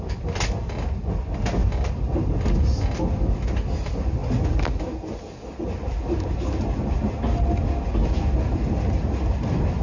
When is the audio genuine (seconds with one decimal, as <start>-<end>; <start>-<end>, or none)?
0.0-9.8